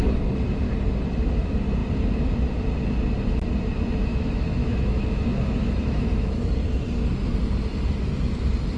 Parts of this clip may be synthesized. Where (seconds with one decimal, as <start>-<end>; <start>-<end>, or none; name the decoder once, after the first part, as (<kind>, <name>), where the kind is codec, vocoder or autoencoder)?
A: 4.1-6.4 (autoencoder, DAC-VAE)